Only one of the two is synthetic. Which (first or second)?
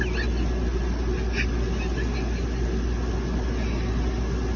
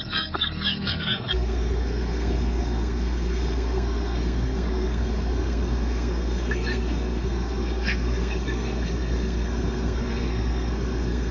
second